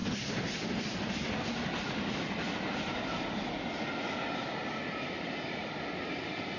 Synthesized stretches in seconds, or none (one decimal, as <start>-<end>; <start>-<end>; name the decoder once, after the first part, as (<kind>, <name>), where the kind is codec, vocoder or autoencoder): none